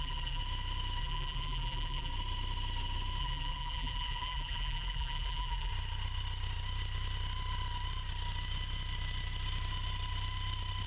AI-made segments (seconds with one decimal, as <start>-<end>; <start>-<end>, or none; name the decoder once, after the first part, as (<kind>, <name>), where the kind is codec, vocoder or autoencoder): 0.0-0.4 (vocoder, BigVGAN v2); 1.0-2.1; 3.2-5.7